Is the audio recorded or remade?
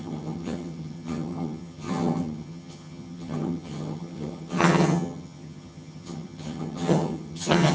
remade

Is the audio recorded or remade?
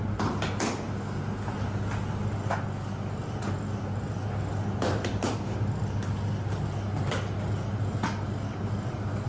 recorded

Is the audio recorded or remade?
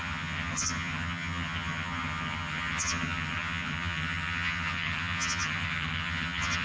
remade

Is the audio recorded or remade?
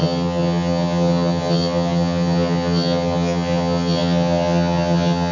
remade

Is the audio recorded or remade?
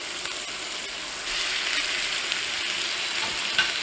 recorded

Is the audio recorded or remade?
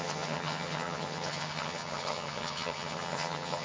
remade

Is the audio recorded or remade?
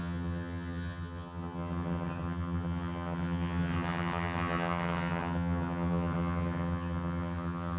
remade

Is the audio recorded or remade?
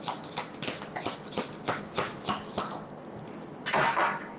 recorded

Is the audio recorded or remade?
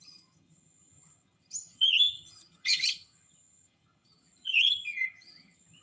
remade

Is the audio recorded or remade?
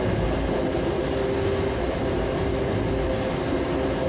recorded